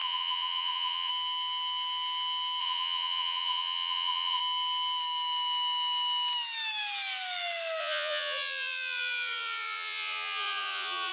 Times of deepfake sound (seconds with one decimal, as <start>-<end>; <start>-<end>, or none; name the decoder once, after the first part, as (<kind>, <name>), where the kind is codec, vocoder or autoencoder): 0.0-1.1 (vocoder, Vocos); 2.6-4.4; 7.8-11.1